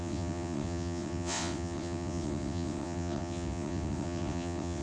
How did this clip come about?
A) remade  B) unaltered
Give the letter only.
A